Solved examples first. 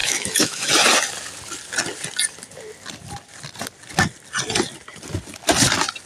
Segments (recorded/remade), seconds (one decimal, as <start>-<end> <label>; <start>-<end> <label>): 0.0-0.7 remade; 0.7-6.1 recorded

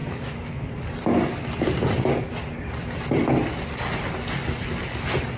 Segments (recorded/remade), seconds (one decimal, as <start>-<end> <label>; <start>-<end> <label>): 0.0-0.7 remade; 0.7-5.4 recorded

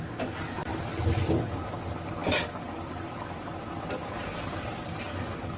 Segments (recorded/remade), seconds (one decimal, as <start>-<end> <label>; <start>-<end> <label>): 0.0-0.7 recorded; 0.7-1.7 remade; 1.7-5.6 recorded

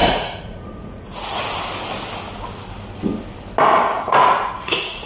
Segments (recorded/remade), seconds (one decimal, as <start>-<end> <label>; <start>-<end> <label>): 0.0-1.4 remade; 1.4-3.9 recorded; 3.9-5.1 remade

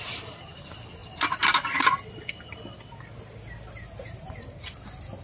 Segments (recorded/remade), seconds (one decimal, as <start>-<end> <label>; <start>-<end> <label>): 0.0-1.0 remade; 1.0-4.1 recorded; 4.1-5.2 remade

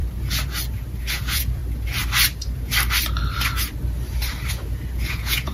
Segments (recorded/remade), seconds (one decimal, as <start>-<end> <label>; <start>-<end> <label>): 0.0-1.1 recorded; 1.1-1.6 remade; 1.6-4.9 recorded; 4.9-5.5 remade

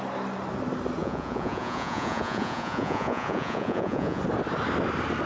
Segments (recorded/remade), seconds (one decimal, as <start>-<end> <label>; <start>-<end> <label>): 0.0-1.0 recorded; 1.0-4.2 remade; 4.2-5.3 recorded